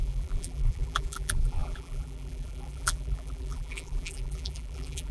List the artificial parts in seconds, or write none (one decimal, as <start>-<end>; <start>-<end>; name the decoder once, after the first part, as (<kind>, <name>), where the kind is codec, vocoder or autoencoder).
0.0-5.1 (vocoder, BigVGAN v2)